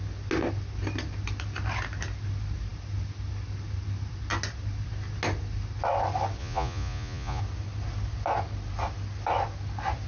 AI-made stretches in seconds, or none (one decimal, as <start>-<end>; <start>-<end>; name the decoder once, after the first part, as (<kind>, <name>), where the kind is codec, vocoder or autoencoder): 6.4-7.4 (vocoder, Vocos)